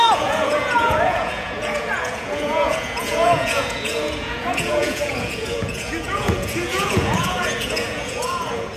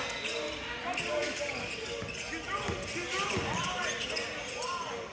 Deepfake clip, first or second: first